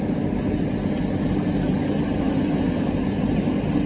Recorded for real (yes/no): yes